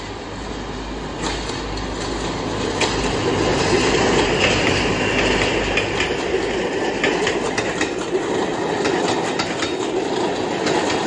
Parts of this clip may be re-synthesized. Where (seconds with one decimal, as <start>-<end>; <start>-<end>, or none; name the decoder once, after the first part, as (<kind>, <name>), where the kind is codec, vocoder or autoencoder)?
3.5-4.9 (vocoder, BigVGAN v2)